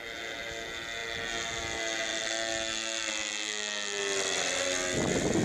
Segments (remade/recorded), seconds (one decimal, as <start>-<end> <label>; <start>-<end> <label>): 0.0-5.4 recorded